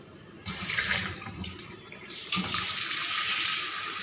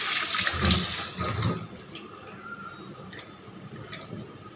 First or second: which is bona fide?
second